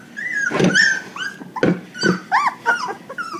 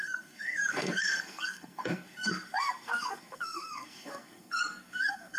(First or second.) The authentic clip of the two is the first